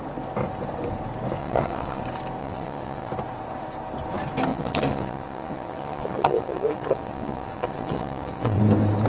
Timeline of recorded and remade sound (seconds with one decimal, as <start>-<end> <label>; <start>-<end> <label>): 0.0-1.4 recorded; 1.4-2.0 remade; 2.0-2.4 recorded; 2.4-3.1 remade; 3.1-4.5 recorded; 4.5-8.6 remade; 8.6-9.1 recorded

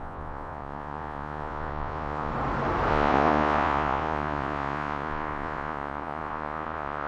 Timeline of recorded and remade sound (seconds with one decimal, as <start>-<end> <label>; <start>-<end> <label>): 0.0-2.3 remade; 2.3-2.9 recorded; 2.9-7.1 remade

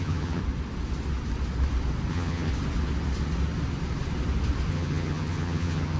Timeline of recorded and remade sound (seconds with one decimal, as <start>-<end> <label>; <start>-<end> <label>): 0.0-0.4 remade; 0.4-2.1 recorded; 2.1-2.5 remade; 2.5-4.7 recorded; 4.7-6.0 remade

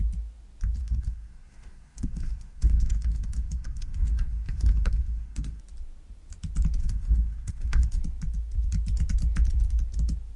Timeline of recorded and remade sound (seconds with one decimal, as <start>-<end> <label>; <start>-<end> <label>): 0.0-0.8 recorded; 0.8-5.6 remade; 5.6-6.8 recorded; 6.8-8.0 remade; 8.0-10.4 recorded

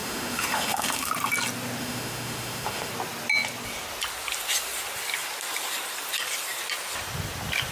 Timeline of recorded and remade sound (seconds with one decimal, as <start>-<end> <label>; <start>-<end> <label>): 0.0-1.1 remade; 1.1-1.8 recorded; 1.8-2.9 remade; 2.9-7.7 recorded

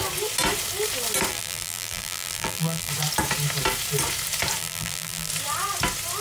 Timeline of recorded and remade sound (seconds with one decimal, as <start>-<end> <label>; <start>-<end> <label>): 0.0-1.3 recorded; 1.3-2.9 remade; 2.9-4.6 recorded; 4.6-5.3 remade; 5.3-6.2 recorded